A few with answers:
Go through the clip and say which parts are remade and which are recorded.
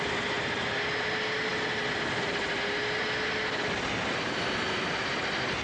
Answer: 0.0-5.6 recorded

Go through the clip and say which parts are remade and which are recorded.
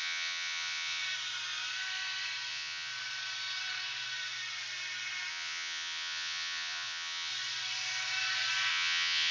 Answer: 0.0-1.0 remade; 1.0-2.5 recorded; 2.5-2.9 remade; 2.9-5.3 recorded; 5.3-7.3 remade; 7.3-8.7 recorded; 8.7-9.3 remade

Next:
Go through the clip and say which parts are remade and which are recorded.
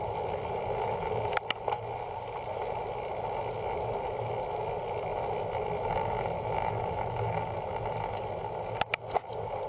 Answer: 0.0-9.7 recorded